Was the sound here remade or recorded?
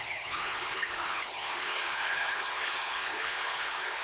remade